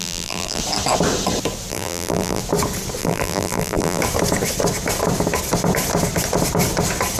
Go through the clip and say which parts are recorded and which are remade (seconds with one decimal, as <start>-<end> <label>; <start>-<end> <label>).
0.0-0.6 remade; 0.6-1.7 recorded; 1.7-2.4 remade; 2.4-3.0 recorded; 3.0-4.0 remade; 4.0-7.2 recorded